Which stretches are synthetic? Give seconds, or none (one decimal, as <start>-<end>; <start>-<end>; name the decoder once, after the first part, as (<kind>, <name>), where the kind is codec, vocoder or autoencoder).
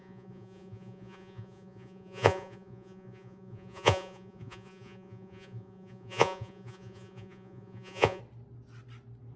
0.0-8.2 (vocoder, Vocos)